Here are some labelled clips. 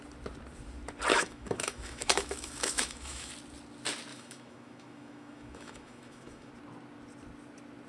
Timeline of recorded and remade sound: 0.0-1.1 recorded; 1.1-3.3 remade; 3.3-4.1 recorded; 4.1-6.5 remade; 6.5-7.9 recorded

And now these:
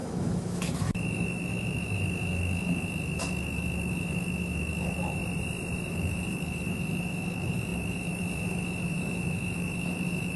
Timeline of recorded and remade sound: 0.0-5.2 remade; 5.2-5.9 recorded; 5.9-10.4 remade

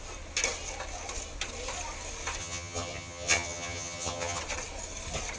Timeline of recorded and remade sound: 0.0-2.4 recorded; 2.4-4.4 remade; 4.4-5.4 recorded

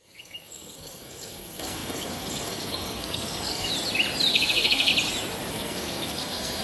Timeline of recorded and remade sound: 0.0-3.7 remade; 3.7-4.3 recorded; 4.3-4.9 remade; 4.9-5.5 recorded; 5.5-6.6 remade

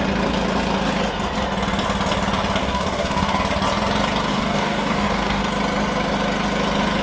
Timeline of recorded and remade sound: 0.0-2.6 recorded; 2.6-3.4 remade; 3.4-4.3 recorded; 4.3-5.4 remade; 5.4-7.0 recorded

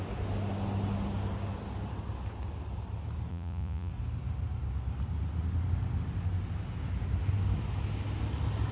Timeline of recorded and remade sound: 0.0-3.3 recorded; 3.3-3.9 remade; 3.9-8.7 recorded

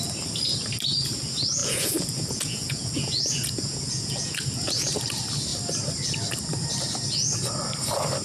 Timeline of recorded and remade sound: 0.0-1.6 recorded; 1.6-4.9 remade; 4.9-8.2 recorded